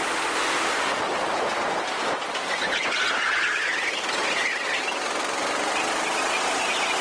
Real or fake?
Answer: real